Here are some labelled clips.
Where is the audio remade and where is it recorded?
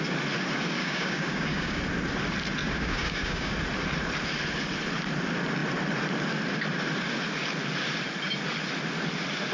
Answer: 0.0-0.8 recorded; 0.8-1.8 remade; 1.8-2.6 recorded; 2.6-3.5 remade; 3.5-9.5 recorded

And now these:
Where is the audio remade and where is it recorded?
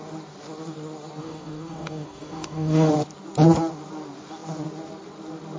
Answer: 0.0-1.2 recorded; 1.2-2.9 remade; 2.9-5.6 recorded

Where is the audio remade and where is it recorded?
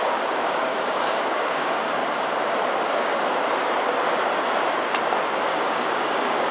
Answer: 0.0-2.0 remade; 2.0-5.4 recorded; 5.4-6.5 remade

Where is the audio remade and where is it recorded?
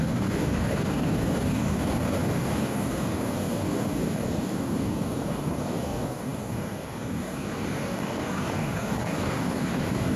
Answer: 0.0-10.2 remade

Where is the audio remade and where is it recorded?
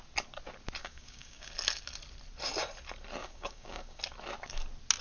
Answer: 0.0-0.8 recorded; 0.8-1.5 remade; 1.5-3.2 recorded; 3.2-4.0 remade; 4.0-5.0 recorded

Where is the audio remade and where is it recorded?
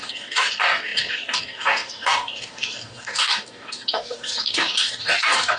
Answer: 0.0-5.6 remade